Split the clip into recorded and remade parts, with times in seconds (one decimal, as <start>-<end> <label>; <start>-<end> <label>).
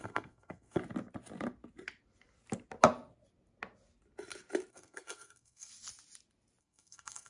0.0-0.8 remade; 0.8-4.7 recorded; 4.7-5.7 remade; 5.7-6.6 recorded; 6.6-7.3 remade